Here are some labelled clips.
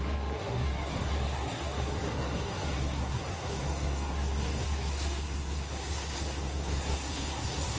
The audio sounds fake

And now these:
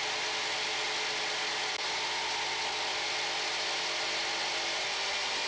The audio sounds real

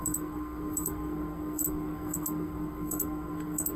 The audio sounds fake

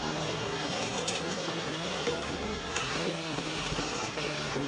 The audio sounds fake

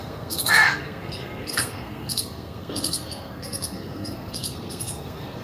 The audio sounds fake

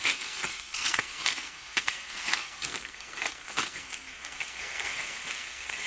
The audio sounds fake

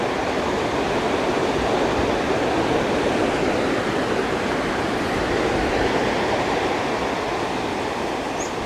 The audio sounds real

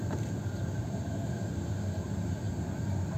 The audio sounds real